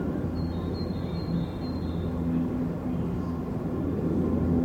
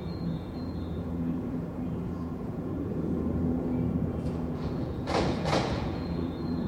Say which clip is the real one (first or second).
first